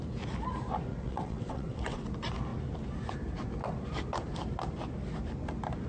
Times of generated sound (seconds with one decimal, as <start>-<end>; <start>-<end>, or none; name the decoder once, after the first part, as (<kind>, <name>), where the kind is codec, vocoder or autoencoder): 0.9-2.0 (vocoder, WaveNeXt)